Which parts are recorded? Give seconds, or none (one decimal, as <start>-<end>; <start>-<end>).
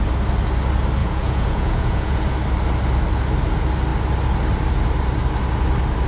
0.0-1.0; 2.2-6.1